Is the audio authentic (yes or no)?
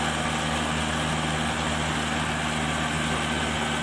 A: yes